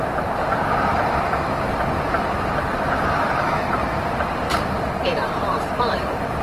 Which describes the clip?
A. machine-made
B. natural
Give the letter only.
A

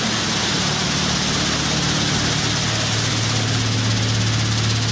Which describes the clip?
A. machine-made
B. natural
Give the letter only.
B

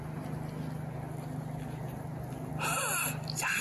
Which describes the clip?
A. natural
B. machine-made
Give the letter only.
A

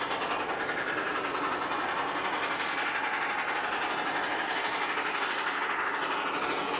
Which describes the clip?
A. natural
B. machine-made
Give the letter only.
A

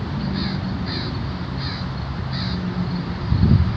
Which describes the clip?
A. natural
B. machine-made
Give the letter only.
A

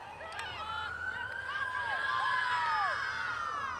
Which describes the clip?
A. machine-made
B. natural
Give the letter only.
B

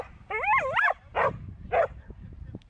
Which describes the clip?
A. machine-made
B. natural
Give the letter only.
B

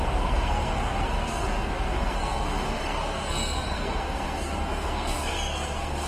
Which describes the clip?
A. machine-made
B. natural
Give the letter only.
A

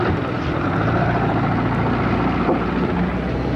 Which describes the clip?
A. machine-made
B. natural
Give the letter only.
B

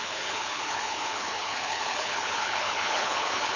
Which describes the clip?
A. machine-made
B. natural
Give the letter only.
A